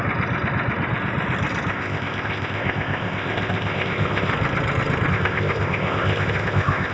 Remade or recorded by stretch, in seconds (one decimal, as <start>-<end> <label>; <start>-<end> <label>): 0.0-1.7 recorded; 1.7-4.3 remade; 4.3-5.1 recorded; 5.1-6.9 remade